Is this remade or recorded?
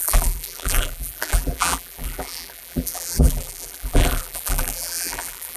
remade